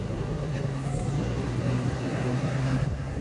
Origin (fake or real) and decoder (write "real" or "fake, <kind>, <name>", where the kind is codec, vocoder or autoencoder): fake, codec, SNAC